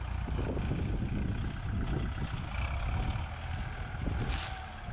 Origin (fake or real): real